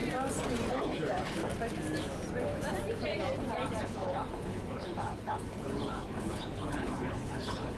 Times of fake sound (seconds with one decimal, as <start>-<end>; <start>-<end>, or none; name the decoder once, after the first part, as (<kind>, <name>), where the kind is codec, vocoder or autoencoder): 0.7-1.4 (codec, HILCodec); 3.8-7.8